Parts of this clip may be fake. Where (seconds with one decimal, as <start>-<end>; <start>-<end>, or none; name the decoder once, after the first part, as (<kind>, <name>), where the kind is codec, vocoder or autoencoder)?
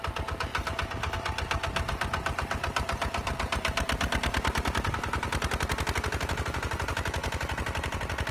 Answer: none